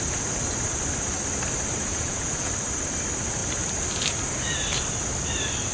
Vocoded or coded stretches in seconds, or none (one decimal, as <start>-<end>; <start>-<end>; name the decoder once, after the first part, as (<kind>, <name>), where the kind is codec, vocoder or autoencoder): 1.9-2.5 (vocoder, Vocos)